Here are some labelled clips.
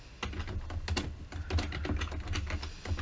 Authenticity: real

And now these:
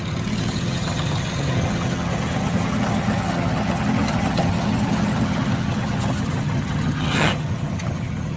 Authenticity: fake